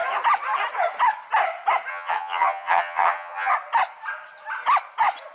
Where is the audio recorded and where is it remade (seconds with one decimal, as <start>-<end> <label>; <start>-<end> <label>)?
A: 0.0-1.9 recorded; 1.9-3.5 remade; 3.5-5.3 recorded